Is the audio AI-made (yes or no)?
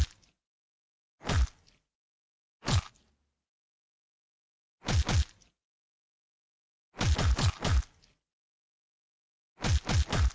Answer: no